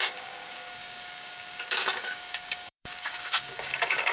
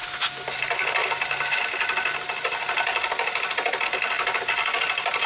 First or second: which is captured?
second